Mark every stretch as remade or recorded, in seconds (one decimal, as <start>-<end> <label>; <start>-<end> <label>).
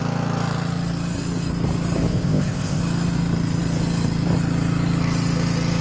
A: 0.0-2.1 recorded; 2.1-2.8 remade; 2.8-5.8 recorded